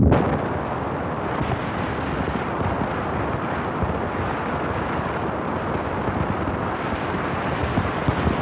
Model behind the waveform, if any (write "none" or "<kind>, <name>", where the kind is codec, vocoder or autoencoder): none